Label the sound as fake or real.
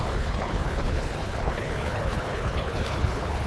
fake